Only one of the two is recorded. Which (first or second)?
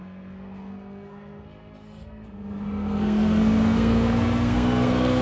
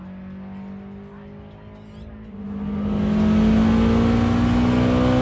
second